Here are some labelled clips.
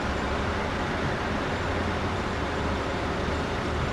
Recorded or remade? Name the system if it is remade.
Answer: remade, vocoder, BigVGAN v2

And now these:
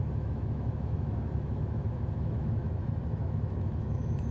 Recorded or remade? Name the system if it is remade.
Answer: remade, autoencoder, DAC-VAE